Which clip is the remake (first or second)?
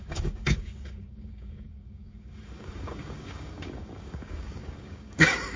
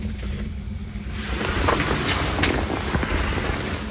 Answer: first